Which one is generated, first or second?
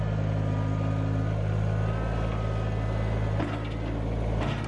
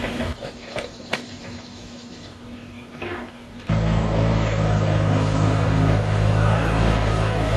second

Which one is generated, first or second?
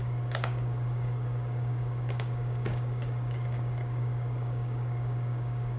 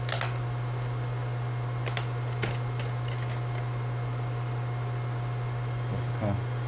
first